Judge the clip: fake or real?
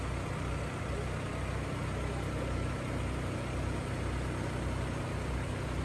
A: real